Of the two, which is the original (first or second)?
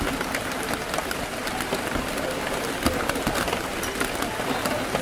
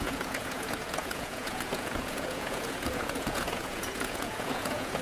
first